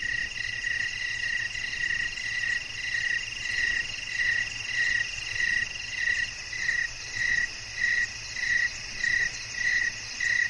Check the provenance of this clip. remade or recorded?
recorded